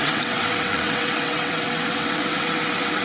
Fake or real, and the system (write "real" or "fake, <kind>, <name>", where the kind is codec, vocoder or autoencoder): fake, vocoder, WaveNeXt